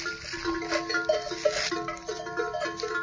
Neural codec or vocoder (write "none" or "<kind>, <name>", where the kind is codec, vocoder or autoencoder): none